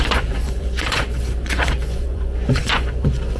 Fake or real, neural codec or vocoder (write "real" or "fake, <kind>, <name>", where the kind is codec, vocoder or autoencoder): fake, vocoder, Vocos